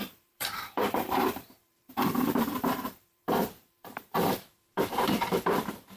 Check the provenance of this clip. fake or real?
fake